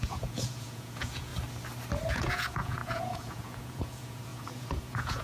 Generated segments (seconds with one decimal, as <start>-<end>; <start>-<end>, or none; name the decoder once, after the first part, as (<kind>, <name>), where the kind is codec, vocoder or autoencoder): 0.0-1.3 (vocoder, Vocos); 2.1-5.2

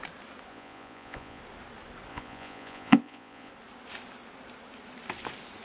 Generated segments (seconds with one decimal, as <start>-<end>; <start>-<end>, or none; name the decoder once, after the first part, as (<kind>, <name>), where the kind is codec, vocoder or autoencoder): 0.5-1.4 (vocoder, Vocos); 2.1-3.5

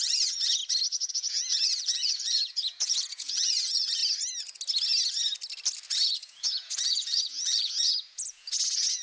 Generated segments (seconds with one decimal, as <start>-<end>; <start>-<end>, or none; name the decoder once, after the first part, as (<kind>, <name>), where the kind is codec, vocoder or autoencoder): 0.0-0.6 (vocoder, Vocos); 1.1-4.0; 5.9-9.0

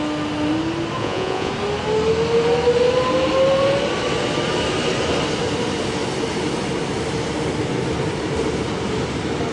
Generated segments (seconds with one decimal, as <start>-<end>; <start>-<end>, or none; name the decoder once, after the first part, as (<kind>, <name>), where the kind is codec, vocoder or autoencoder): 1.0-1.5 (vocoder, Vocos)

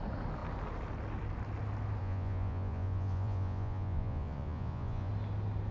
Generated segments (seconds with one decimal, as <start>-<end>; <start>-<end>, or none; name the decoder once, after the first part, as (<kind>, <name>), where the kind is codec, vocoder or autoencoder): 2.0-5.1 (vocoder, Vocos)

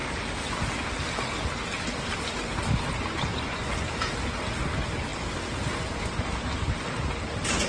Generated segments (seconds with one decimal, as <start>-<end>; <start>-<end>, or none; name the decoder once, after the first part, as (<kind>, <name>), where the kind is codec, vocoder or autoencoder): 3.3-3.9 (vocoder, Vocos)

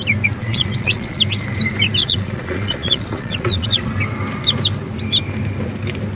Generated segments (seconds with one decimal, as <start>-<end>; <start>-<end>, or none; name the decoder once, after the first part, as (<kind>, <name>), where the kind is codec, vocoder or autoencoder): 0.4-1.2 (vocoder, Vocos); 2.0-3.9

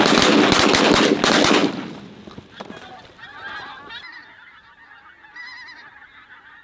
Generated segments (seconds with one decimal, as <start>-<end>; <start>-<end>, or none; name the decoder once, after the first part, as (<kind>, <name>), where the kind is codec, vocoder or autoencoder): none